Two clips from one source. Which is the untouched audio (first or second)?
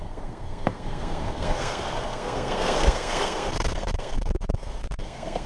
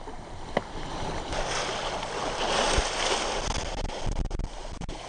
second